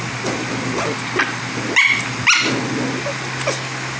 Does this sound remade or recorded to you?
recorded